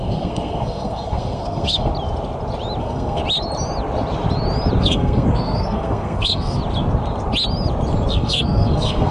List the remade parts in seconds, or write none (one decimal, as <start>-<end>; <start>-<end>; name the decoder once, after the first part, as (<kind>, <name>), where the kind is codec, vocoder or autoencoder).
0.0-1.9 (codec, SNAC); 2.8-3.2; 4.8-6.6; 8.1-9.1